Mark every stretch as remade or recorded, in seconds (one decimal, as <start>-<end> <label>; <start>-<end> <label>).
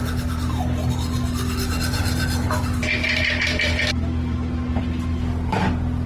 0.0-6.1 recorded